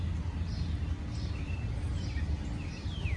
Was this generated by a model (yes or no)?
no